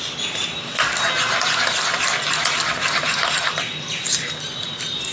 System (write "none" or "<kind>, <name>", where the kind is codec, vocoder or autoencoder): none